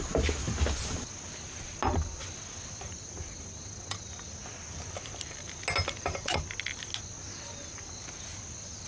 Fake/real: real